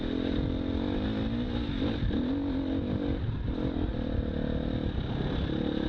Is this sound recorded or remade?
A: recorded